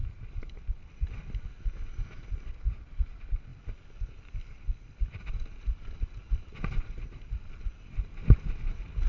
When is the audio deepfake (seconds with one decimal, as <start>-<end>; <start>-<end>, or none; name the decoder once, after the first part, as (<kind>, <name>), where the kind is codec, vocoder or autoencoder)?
none

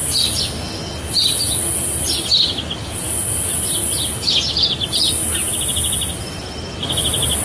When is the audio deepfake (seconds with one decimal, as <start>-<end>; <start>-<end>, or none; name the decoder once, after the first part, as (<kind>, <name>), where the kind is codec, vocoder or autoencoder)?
none

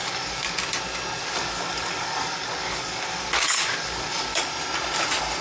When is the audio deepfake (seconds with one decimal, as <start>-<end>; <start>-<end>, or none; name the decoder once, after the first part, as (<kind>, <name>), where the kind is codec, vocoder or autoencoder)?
0.0-0.6 (codec, DAC); 1.2-4.4

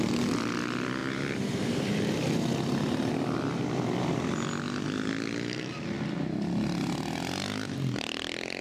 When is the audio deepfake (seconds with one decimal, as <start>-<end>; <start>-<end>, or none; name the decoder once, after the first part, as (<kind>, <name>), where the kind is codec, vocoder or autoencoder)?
1.0-3.1 (vocoder, BigVGAN v2)

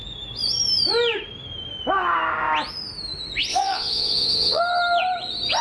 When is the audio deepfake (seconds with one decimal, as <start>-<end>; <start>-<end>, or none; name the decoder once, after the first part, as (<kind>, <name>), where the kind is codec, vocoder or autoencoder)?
3.5-4.6 (vocoder, WaveNeXt)

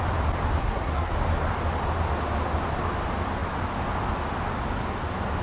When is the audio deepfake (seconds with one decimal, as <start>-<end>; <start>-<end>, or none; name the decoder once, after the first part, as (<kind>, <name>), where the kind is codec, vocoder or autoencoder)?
0.6-1.1 (codec, SNAC)

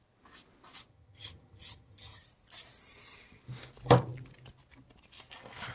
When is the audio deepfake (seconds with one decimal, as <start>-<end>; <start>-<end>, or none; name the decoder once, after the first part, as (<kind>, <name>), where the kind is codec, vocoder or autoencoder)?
0.9-2.2 (vocoder, HiFi-GAN)

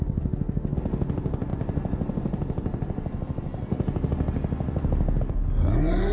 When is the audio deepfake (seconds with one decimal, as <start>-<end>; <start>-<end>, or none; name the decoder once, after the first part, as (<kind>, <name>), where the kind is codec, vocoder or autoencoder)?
none